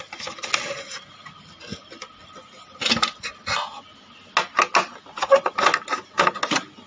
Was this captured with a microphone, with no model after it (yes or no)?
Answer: yes